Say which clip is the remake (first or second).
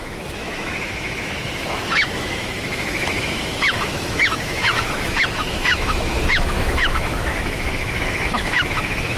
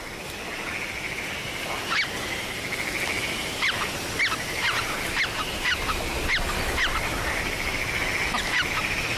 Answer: first